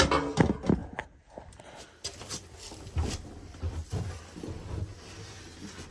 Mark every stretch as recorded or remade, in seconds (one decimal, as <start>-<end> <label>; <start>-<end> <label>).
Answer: 0.0-5.9 recorded